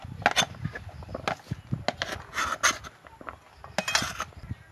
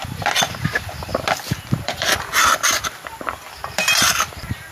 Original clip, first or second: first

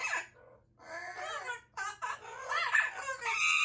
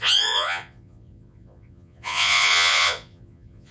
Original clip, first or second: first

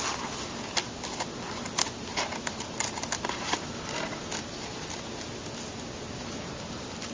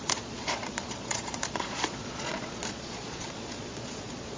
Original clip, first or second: first